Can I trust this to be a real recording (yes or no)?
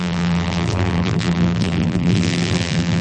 no